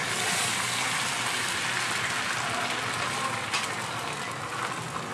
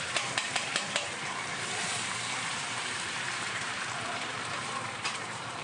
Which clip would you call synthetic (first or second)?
second